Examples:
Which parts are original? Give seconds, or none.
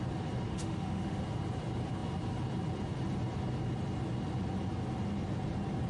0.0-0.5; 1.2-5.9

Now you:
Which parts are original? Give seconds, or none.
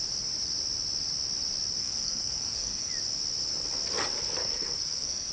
0.0-1.8; 2.9-4.4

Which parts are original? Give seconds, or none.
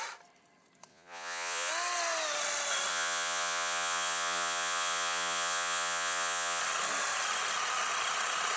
0.0-0.9; 1.7-2.9; 6.6-8.6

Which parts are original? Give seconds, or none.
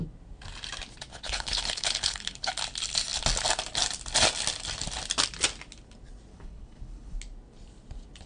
0.0-1.1; 2.5-6.3; 7.2-8.3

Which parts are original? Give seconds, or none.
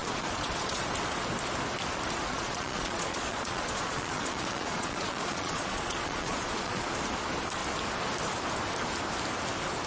0.8-2.3; 6.9-9.9